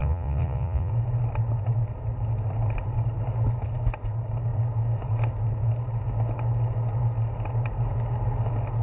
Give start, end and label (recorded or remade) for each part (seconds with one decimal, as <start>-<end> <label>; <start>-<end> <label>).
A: 0.0-0.9 remade; 0.9-8.8 recorded